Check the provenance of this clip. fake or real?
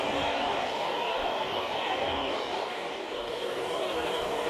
fake